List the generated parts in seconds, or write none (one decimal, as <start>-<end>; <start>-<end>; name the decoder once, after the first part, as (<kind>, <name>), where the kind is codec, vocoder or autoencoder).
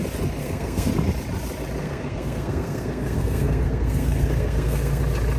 0.4-0.9 (codec, SNAC); 1.8-5.0